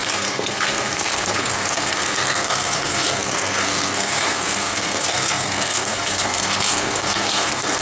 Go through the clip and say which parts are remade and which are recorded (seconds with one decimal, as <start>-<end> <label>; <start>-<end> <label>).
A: 0.0-7.8 remade